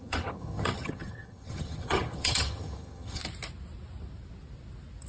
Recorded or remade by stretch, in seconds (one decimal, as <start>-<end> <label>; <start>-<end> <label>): 0.0-3.2 remade; 3.2-5.1 recorded